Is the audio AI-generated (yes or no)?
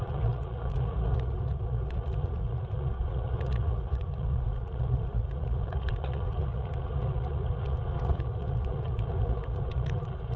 yes